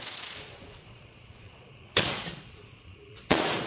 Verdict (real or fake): fake